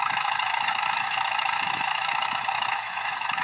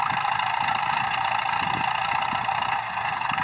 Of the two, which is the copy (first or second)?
first